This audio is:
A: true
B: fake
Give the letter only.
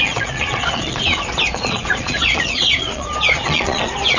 B